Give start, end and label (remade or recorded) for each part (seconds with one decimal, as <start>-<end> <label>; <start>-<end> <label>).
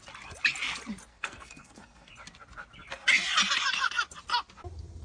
0.0-1.1 recorded; 1.1-2.1 remade; 2.1-5.0 recorded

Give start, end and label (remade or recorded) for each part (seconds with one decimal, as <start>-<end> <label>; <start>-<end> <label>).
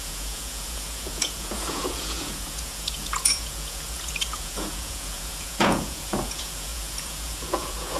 0.0-8.0 remade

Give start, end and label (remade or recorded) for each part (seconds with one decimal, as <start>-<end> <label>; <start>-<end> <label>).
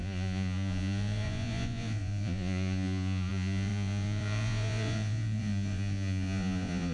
0.0-6.9 remade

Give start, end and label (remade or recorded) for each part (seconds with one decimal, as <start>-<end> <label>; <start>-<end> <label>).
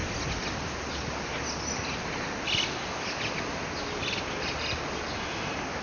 0.0-5.8 recorded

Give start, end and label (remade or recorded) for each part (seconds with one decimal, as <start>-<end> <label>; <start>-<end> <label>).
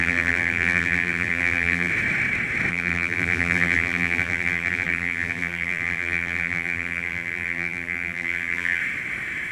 0.0-1.9 remade; 1.9-2.7 recorded; 2.7-8.8 remade; 8.8-9.5 recorded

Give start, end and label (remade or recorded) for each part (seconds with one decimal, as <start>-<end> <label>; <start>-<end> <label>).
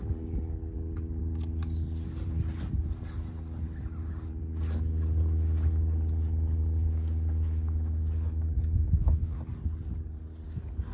0.0-6.8 recorded; 6.8-9.4 remade; 9.4-10.9 recorded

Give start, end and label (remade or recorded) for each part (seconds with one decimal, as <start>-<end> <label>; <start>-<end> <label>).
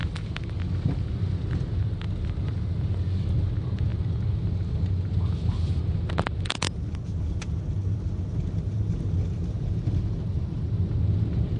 0.0-11.6 recorded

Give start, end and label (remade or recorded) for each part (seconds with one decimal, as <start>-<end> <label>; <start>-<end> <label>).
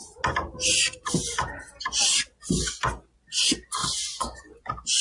0.0-3.8 recorded; 3.8-5.0 remade